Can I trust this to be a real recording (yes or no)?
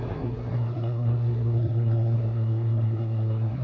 no